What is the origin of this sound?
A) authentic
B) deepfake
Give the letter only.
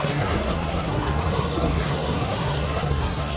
B